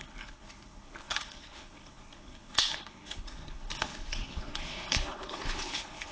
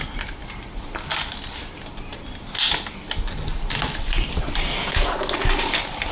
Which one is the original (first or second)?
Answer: second